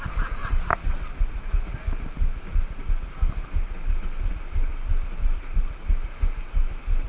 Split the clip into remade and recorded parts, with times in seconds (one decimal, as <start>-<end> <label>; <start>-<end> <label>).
0.0-7.1 recorded